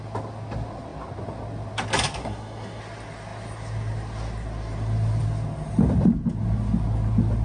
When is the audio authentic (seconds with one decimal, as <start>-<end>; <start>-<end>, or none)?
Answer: 0.0-2.2; 2.8-7.4